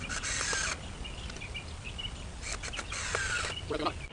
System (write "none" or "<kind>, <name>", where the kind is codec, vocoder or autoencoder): none